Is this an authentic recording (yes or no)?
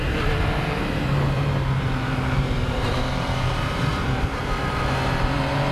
no